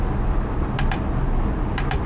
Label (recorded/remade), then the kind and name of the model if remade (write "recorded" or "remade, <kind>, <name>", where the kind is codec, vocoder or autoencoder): recorded